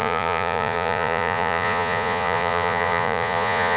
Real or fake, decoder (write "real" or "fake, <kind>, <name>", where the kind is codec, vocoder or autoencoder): fake, vocoder, Vocos